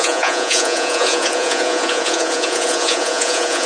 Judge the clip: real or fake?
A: fake